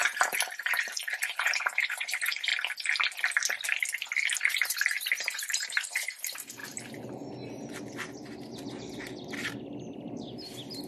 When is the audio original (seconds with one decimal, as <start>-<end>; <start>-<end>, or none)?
2.5-4.5; 6.6-10.9

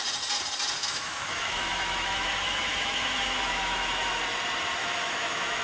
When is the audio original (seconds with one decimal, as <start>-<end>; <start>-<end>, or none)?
0.0-0.8; 4.2-4.8